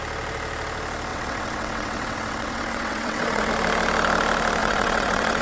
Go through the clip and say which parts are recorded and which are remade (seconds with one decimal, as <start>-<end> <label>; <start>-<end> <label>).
0.0-1.1 recorded; 1.1-3.5 remade; 3.5-4.6 recorded; 4.6-5.4 remade